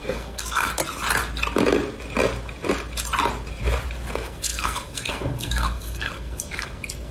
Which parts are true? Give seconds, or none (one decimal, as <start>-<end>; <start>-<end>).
0.8-4.1

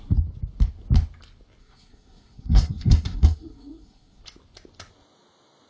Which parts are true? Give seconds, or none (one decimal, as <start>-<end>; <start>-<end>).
0.0-1.6; 4.2-5.7

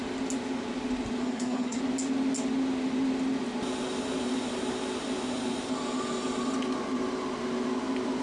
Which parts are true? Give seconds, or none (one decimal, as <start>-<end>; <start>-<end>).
0.0-1.2; 1.8-8.2